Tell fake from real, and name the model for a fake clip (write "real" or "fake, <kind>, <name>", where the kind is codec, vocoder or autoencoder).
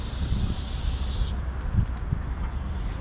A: real